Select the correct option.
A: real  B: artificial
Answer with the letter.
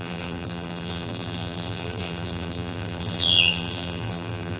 B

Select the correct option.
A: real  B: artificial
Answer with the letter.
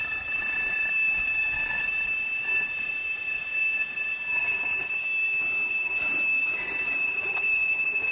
B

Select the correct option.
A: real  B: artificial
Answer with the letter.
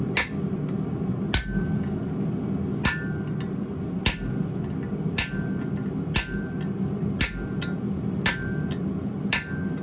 A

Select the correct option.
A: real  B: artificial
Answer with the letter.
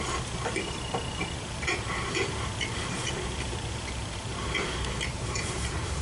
B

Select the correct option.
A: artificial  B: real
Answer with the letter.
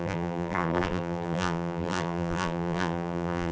A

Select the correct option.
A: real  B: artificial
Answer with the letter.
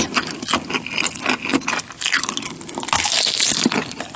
A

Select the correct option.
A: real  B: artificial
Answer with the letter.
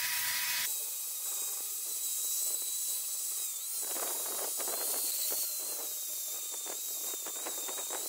B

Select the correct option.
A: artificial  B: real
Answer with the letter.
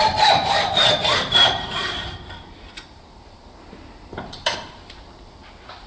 A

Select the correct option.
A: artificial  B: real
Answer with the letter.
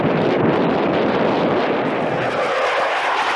B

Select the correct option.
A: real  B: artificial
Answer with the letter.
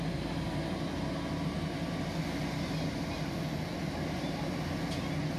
A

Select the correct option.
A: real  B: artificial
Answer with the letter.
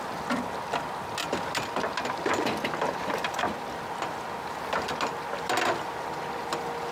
A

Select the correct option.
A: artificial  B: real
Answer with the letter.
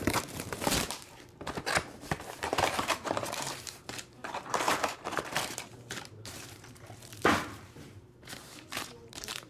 A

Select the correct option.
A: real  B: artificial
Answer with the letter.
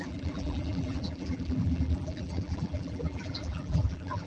B